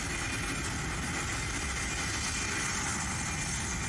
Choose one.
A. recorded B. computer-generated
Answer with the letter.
A